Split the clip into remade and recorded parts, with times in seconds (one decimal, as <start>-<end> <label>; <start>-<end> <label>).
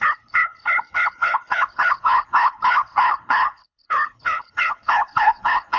0.0-5.8 remade